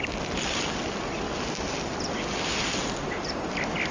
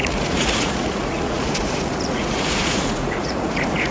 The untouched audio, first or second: first